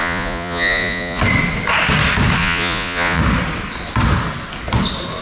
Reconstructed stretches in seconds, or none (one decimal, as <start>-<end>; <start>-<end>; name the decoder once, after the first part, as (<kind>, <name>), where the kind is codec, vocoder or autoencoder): 0.0-1.2 (vocoder, Vocos); 2.4-3.2